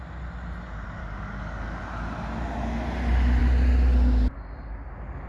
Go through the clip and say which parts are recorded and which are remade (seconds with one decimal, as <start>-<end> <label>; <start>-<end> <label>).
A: 0.0-1.0 recorded; 1.0-1.8 remade; 1.8-5.3 recorded